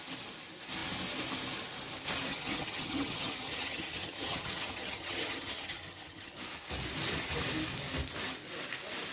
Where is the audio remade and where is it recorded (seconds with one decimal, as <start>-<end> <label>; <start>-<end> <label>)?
0.0-2.3 recorded; 2.3-6.4 remade; 6.4-9.1 recorded